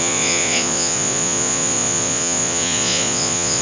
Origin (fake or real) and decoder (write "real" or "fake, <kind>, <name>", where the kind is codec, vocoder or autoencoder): fake, vocoder, Vocos